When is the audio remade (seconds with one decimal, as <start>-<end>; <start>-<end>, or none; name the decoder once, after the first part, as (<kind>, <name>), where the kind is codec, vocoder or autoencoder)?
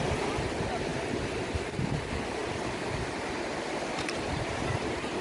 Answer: none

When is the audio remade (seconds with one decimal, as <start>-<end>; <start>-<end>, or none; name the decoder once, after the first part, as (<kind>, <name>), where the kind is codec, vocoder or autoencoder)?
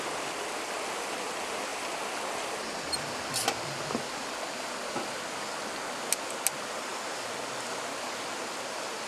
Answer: none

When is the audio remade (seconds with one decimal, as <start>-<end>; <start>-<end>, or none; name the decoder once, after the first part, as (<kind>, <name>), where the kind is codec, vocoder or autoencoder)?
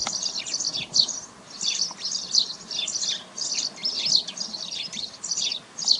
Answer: none